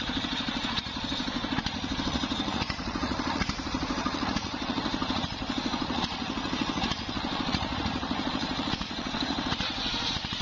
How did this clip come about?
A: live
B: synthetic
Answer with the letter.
B